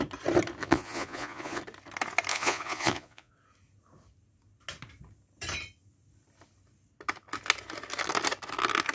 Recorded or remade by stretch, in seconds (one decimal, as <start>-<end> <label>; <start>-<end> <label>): 0.0-0.6 recorded; 0.6-1.6 remade; 1.6-2.3 recorded; 2.3-3.3 remade; 3.3-8.9 recorded